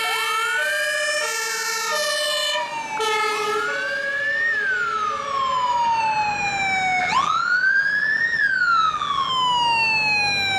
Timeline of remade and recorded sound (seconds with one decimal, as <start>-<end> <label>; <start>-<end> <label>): 0.0-7.0 recorded; 7.0-9.3 remade; 9.3-10.6 recorded